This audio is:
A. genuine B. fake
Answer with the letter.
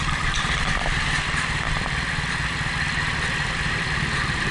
B